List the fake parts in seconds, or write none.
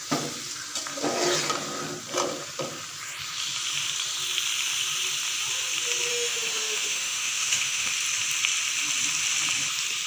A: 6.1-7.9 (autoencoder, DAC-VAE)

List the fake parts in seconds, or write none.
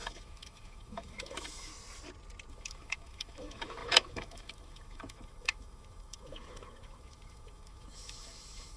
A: 0.0-1.7 (autoencoder, DAC-VAE); 2.5-8.8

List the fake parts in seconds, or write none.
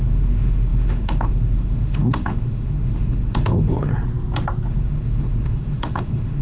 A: 0.0-3.9 (autoencoder, DAC-VAE); 4.7-6.4